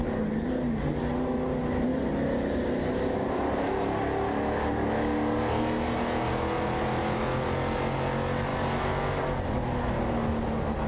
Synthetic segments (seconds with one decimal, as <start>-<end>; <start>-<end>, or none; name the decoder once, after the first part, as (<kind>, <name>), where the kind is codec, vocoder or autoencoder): none